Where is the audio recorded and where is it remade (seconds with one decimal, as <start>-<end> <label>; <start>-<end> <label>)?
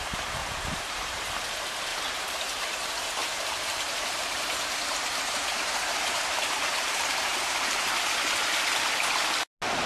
0.0-0.4 recorded; 0.4-1.3 remade; 1.3-1.9 recorded; 1.9-2.6 remade; 2.6-3.2 recorded; 3.2-7.9 remade; 7.9-9.9 recorded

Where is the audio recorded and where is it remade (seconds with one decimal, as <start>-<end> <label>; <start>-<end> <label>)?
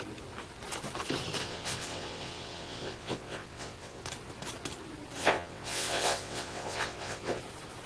0.0-1.4 recorded; 1.4-4.0 remade; 4.0-5.2 recorded; 5.2-7.4 remade; 7.4-7.9 recorded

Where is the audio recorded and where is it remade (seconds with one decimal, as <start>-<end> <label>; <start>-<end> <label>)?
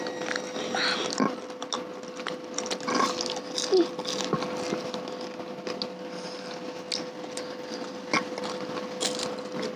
0.0-9.8 recorded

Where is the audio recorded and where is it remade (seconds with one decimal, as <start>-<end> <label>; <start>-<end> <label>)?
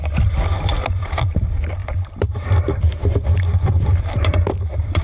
0.0-0.7 recorded; 0.7-1.4 remade; 1.4-1.8 recorded; 1.8-5.0 remade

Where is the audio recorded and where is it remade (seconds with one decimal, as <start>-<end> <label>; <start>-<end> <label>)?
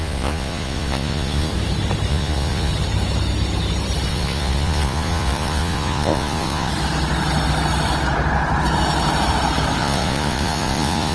0.0-1.5 remade; 1.5-2.1 recorded; 2.1-2.7 remade; 2.7-4.1 recorded; 4.1-6.7 remade; 6.7-9.8 recorded; 9.8-11.1 remade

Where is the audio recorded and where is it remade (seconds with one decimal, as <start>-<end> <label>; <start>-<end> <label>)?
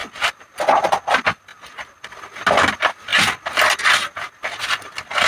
0.0-5.3 recorded